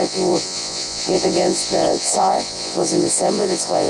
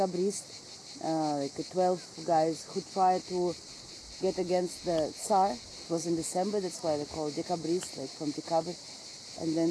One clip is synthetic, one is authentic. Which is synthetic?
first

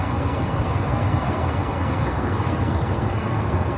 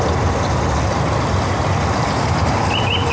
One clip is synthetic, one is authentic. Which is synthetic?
first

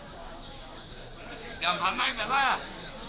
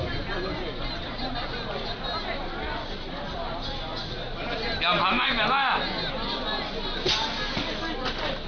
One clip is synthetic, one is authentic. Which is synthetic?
first